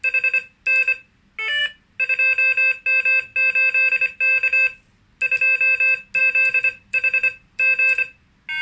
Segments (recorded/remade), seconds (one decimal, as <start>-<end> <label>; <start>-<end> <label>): 0.0-4.3 recorded; 4.3-5.0 remade; 5.0-6.2 recorded; 6.2-8.0 remade; 8.0-8.6 recorded